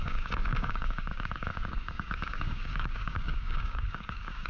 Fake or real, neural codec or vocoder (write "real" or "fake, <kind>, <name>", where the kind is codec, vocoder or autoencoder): fake, codec, DAC